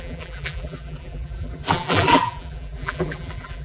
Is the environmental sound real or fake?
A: fake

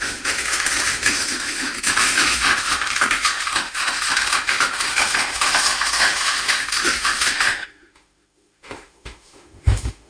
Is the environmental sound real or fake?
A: fake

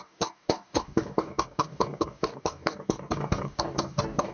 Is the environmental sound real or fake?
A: fake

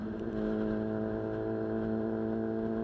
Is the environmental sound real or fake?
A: real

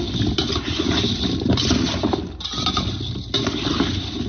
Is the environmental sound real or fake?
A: real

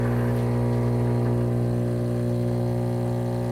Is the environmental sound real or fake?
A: real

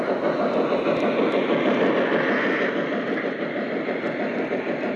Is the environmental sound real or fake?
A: real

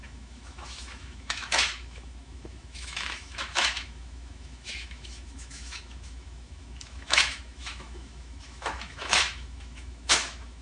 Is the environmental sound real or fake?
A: fake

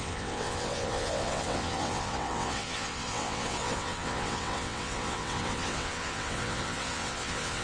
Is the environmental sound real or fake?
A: fake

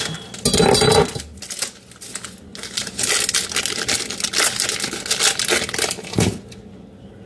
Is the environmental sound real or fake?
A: real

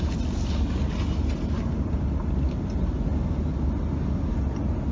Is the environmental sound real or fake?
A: real